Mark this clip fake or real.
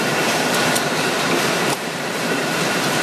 fake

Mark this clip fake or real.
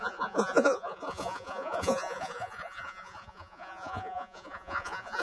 fake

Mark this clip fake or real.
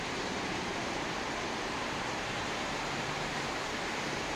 fake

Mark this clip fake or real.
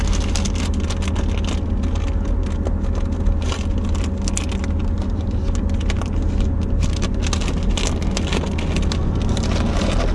real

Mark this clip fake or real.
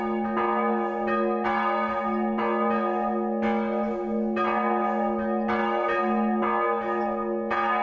real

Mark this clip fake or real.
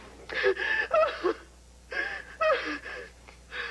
real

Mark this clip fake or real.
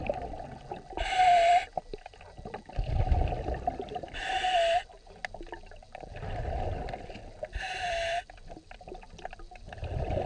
real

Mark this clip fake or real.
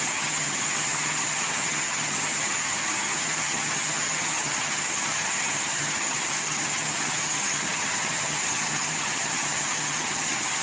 fake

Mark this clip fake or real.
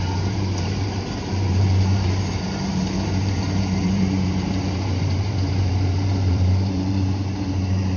fake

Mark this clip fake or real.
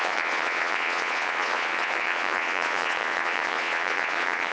fake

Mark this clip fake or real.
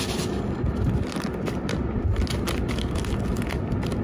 real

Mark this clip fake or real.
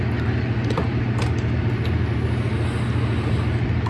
real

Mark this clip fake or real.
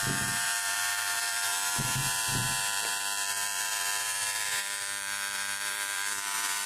fake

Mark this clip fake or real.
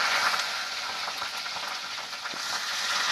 fake